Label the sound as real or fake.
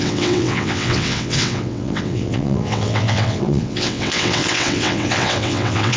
fake